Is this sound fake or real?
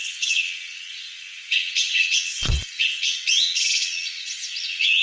fake